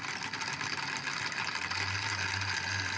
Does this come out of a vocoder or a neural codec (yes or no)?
no